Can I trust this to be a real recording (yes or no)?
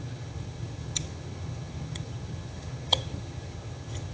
no